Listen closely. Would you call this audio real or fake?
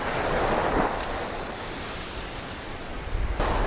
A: real